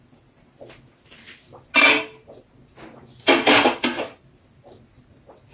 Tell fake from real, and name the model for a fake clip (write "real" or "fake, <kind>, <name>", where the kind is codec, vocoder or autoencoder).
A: real